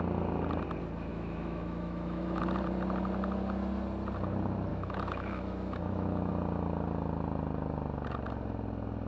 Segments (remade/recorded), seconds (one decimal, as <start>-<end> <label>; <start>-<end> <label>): 0.0-1.1 recorded; 1.1-2.4 remade; 2.4-4.7 recorded; 4.7-6.3 remade; 6.3-9.1 recorded